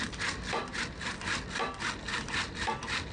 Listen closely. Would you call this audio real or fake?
fake